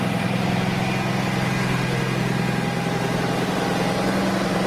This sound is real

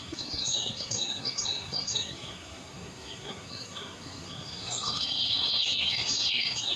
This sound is fake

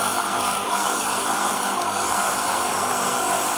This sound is fake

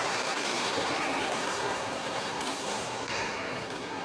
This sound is fake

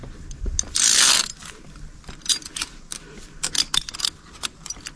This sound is real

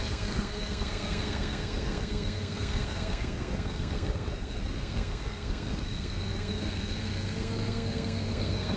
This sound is fake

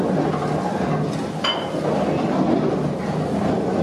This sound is real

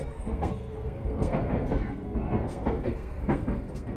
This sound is fake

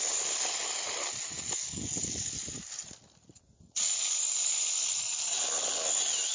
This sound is real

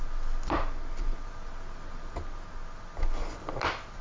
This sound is real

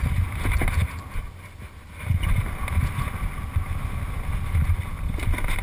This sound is real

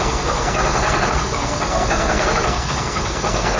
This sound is fake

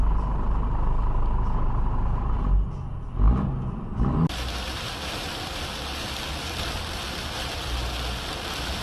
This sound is real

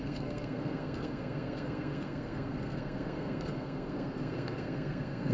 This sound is fake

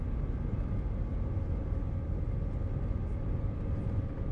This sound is real